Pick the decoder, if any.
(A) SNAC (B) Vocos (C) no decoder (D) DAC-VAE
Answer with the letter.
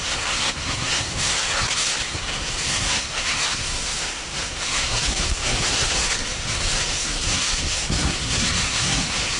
A